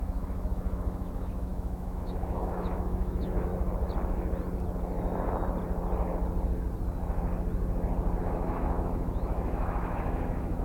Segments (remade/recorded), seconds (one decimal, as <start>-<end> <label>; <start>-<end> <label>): 0.0-3.5 remade; 3.5-8.2 recorded; 8.2-10.6 remade